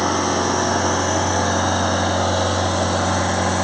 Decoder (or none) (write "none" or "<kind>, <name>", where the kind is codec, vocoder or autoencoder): none